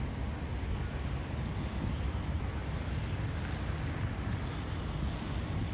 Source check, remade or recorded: recorded